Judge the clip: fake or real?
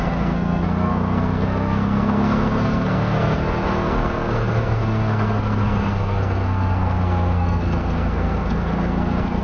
fake